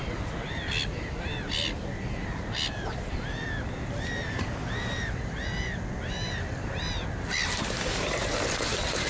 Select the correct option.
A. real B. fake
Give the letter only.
A